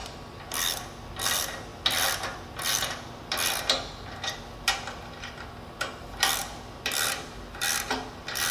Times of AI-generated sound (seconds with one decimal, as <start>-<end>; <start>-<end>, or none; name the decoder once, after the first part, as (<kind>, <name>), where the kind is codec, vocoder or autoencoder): none